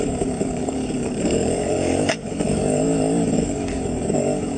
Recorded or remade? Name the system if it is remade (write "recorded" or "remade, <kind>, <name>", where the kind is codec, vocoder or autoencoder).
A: remade, codec, DAC